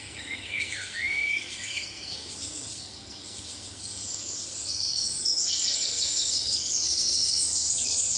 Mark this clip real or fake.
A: fake